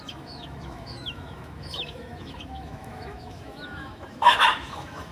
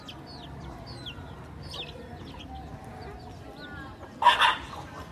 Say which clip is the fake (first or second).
first